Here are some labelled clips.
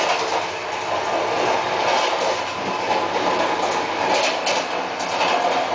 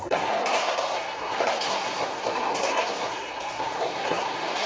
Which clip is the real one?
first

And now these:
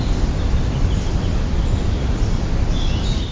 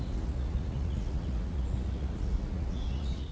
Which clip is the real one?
first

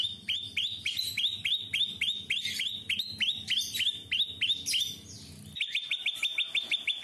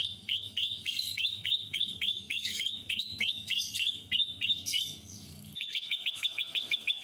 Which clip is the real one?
first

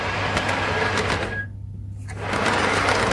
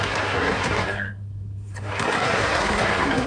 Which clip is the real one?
first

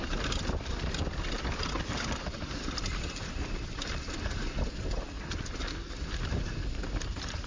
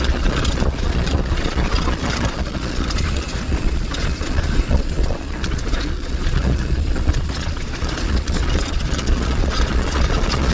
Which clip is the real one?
first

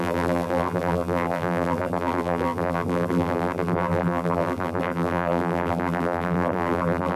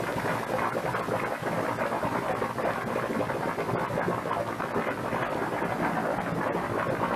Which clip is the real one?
second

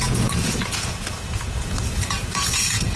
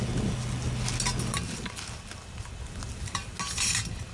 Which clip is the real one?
second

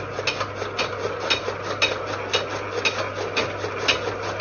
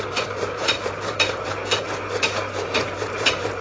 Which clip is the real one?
first